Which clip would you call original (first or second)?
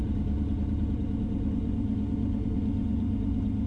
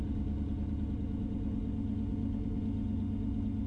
second